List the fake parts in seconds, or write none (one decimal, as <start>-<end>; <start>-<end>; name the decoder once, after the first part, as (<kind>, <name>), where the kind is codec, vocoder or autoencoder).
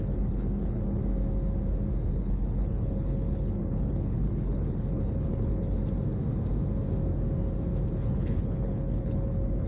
0.0-1.0 (codec, HILCodec); 2.1-5.8; 7.9-9.7